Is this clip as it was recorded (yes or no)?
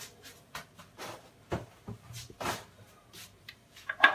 no